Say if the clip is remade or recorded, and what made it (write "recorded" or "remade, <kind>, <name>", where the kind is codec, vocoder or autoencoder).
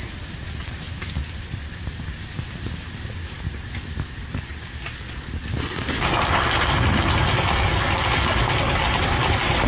recorded